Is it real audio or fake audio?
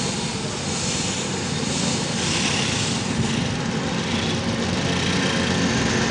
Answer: real